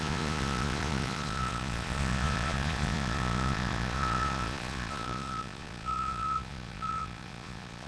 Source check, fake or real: fake